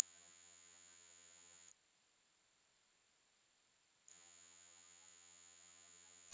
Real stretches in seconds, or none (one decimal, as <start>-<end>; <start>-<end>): 1.7-4.1